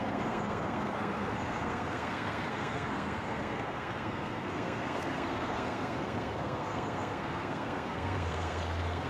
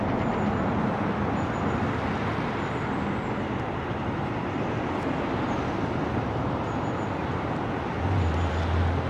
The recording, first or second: second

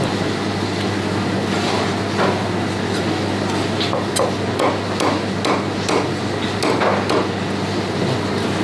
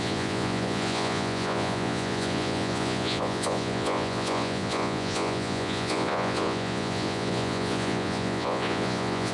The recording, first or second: first